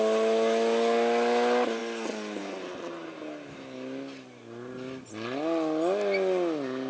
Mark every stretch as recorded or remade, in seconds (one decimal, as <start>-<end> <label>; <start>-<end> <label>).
0.0-6.9 recorded